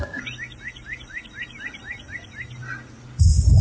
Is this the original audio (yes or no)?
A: yes